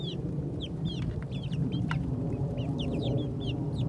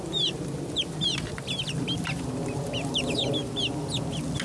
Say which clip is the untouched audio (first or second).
second